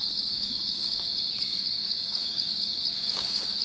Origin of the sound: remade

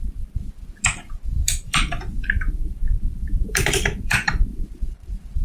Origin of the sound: remade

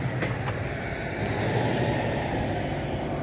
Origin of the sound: recorded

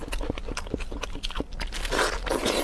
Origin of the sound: recorded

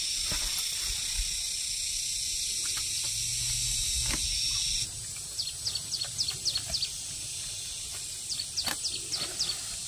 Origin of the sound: recorded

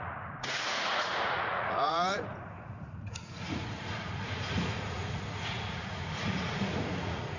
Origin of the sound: remade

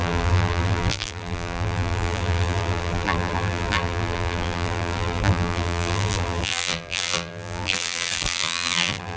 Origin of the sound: remade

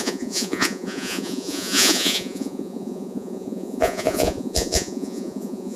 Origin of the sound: remade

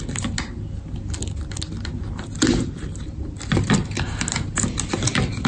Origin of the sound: recorded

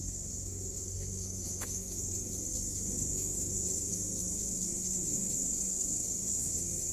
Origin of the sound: remade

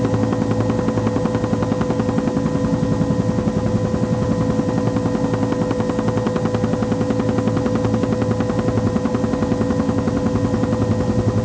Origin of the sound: recorded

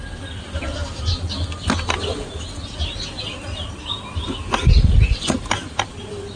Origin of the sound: recorded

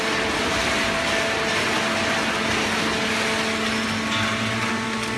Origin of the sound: recorded